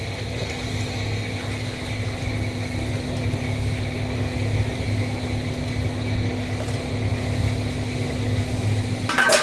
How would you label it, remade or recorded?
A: recorded